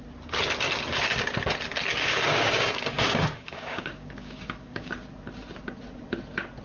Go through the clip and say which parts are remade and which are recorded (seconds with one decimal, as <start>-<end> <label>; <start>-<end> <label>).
0.0-1.9 recorded; 1.9-4.9 remade; 4.9-6.6 recorded